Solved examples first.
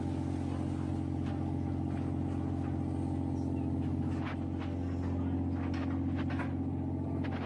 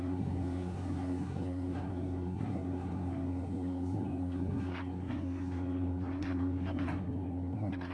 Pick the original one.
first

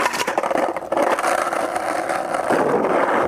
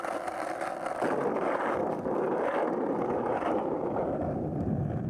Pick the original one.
second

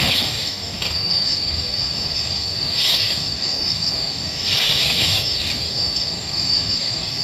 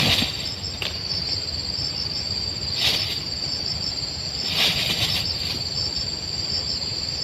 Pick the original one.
second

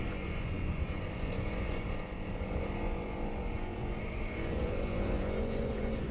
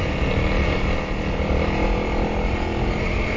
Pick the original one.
second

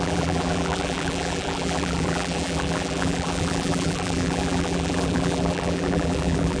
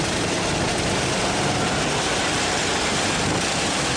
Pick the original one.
second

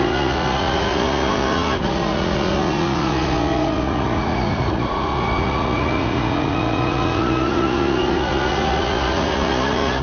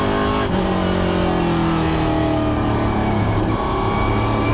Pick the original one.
second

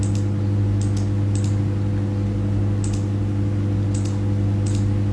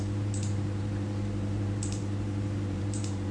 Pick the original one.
first